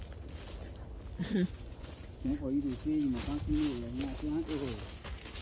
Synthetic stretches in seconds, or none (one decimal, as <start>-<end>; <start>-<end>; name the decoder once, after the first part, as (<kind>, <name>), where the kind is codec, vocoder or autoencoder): 1.2-2.3 (vocoder, Vocos)